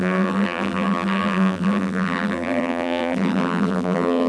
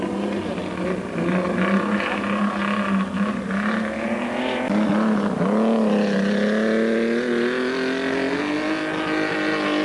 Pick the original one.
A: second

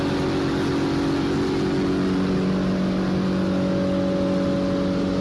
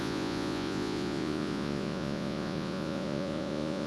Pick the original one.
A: first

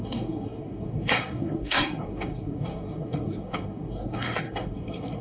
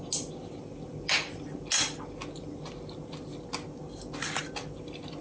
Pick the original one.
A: second